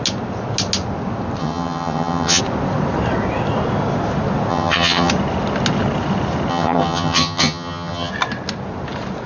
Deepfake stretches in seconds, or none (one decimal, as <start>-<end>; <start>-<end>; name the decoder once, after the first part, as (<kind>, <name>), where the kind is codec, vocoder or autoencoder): 1.4-2.4 (vocoder, HiFi-GAN); 4.5-5.1; 6.5-8.1